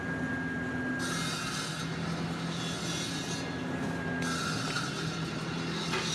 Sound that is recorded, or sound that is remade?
recorded